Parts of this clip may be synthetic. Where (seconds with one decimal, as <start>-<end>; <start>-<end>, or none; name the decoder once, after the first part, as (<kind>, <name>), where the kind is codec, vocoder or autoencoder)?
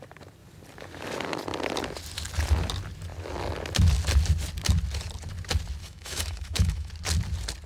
5.8-6.9 (autoencoder, DAC-VAE)